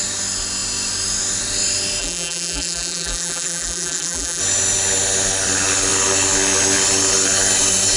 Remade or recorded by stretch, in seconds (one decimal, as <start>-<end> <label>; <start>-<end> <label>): 0.0-2.0 recorded; 2.0-4.4 remade; 4.4-8.0 recorded